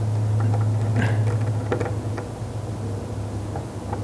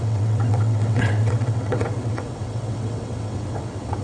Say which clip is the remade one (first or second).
second